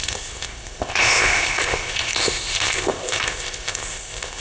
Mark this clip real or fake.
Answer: fake